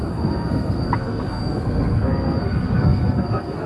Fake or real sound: fake